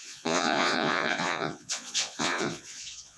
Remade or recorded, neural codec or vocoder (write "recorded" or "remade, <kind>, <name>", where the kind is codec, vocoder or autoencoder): remade, vocoder, Vocos